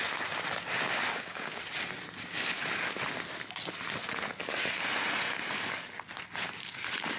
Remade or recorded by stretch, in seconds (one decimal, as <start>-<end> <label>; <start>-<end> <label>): 0.0-1.1 recorded; 1.1-1.6 remade; 1.6-7.2 recorded